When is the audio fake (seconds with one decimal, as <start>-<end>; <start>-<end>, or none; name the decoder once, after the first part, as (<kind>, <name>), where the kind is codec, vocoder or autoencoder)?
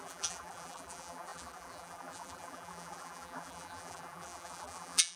0.0-5.2 (vocoder, BigVGAN v2)